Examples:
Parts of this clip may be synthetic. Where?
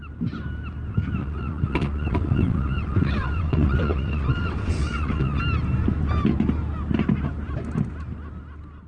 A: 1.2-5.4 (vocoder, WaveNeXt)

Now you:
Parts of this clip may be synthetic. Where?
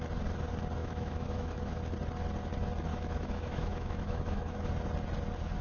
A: 0.8-1.8 (autoencoder, DAC-VAE); 2.9-4.7